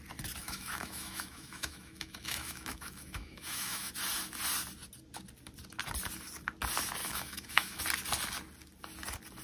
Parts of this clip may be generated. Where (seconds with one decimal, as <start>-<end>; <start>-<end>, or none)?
0.4-3.9; 7.0-7.8